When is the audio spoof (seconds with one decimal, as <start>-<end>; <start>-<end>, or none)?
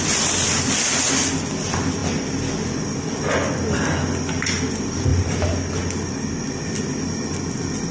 none